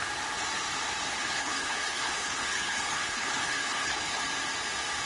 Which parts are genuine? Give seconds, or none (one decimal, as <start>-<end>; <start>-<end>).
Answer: 0.0-1.1; 4.2-5.1